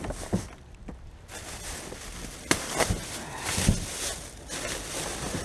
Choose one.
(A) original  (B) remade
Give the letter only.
A